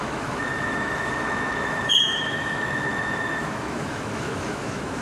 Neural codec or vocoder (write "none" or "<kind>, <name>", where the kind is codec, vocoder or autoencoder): autoencoder, DAC-VAE